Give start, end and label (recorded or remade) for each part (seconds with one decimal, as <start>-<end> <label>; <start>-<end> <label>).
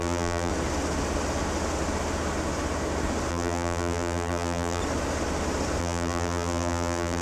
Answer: 0.0-0.5 remade; 0.5-3.3 recorded; 3.3-4.8 remade; 4.8-5.8 recorded; 5.8-7.2 remade